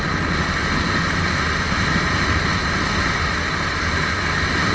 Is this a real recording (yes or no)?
yes